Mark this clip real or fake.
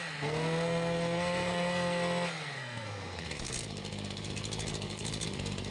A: fake